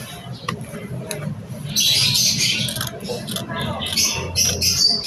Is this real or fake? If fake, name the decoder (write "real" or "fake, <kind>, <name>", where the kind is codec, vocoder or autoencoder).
real